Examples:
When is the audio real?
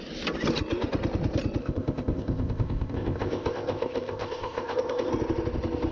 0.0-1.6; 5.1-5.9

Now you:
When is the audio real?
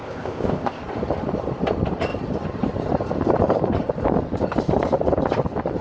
0.8-5.8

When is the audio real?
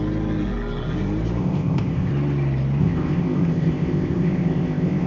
0.0-1.4; 2.1-2.8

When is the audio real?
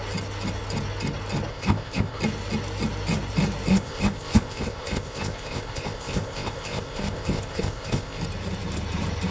0.0-1.5; 2.2-3.7; 8.2-9.3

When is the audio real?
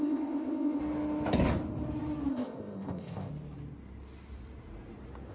0.8-2.3; 3.3-5.3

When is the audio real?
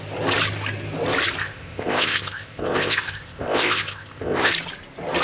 0.0-1.4; 4.5-5.2